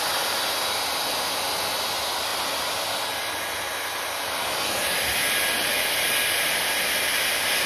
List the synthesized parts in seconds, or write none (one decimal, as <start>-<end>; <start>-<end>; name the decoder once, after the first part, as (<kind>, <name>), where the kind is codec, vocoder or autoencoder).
none